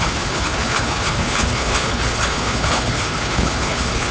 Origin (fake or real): fake